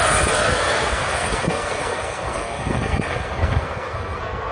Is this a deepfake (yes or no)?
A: yes